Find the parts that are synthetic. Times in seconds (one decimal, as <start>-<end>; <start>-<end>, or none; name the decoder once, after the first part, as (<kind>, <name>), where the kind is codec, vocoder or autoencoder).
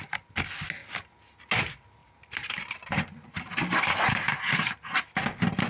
2.0-4.7 (vocoder, BigVGAN v2)